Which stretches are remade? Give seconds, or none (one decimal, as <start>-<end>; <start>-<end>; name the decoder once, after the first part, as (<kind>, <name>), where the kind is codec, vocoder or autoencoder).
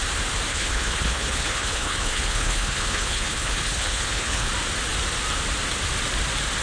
0.5-4.5 (codec, HILCodec)